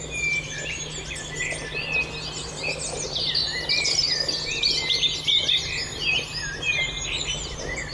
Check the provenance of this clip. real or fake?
real